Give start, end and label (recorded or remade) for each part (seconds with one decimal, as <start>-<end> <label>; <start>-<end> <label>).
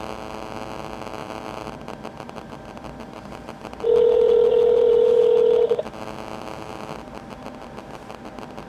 0.0-1.2 recorded; 1.2-5.2 remade; 5.2-8.7 recorded